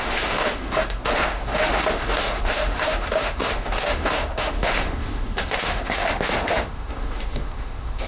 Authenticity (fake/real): fake